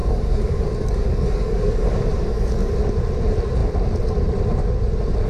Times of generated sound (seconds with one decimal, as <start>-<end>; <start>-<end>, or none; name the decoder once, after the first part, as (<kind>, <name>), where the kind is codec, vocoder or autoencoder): 0.0-2.7 (codec, DAC)